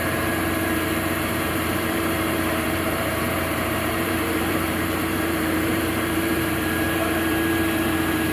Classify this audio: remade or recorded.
remade